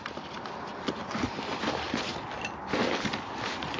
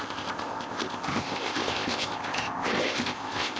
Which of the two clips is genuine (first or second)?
first